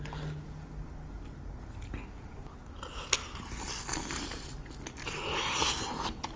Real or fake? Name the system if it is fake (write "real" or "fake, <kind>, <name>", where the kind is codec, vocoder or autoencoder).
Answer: real